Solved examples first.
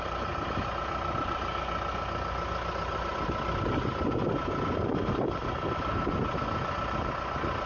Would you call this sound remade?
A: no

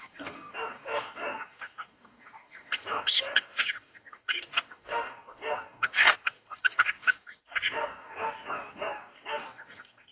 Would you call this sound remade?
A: yes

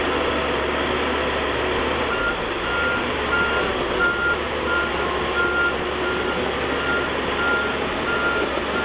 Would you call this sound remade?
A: no